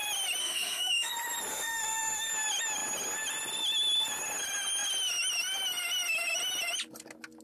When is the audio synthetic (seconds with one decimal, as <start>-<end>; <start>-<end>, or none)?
0.4-1.1; 1.5-2.3